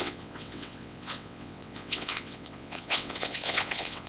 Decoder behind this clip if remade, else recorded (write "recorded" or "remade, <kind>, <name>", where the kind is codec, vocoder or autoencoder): remade, vocoder, WaveNeXt